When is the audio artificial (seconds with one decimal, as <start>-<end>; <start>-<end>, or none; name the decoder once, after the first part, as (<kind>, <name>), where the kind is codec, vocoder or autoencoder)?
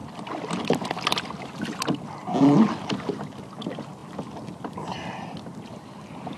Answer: none